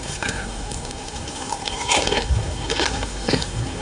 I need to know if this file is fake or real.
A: fake